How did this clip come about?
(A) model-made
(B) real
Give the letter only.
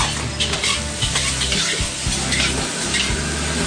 B